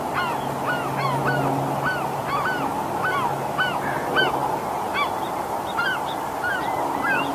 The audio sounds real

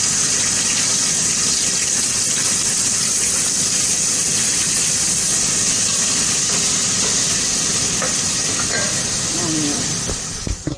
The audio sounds real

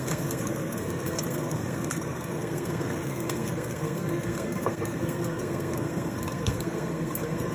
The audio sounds fake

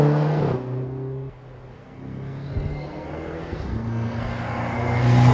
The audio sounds fake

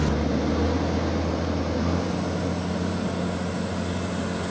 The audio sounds real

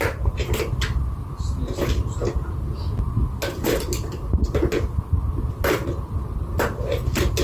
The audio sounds real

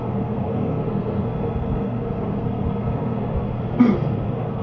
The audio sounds fake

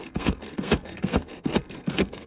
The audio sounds fake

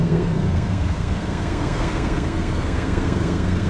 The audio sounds fake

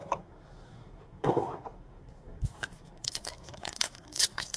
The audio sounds fake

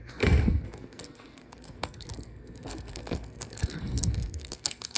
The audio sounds fake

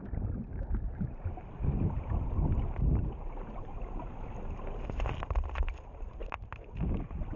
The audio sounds real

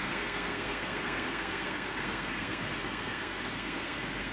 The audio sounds fake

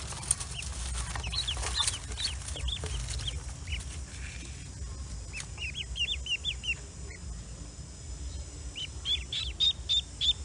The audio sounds real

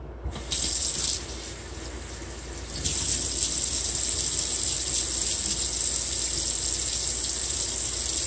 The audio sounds real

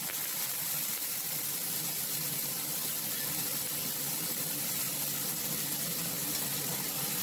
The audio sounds real